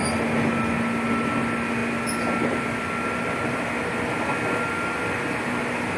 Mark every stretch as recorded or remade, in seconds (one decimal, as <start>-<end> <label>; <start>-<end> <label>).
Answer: 0.0-6.0 recorded